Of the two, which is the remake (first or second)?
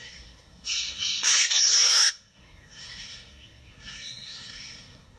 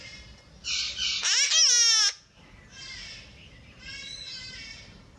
first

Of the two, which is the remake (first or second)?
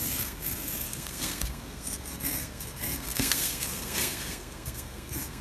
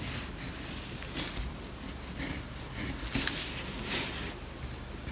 first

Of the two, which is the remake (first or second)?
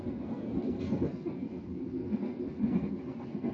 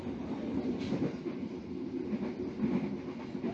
first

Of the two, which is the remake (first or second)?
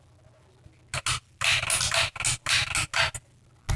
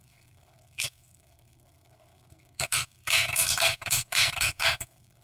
second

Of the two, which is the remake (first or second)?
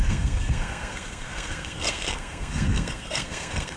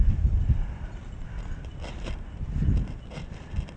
first